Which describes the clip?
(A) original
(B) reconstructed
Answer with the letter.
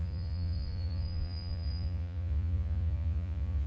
B